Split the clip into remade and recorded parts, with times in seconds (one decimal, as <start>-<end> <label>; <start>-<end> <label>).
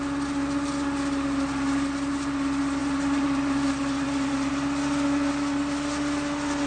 0.0-2.8 recorded; 2.8-4.5 remade; 4.5-6.7 recorded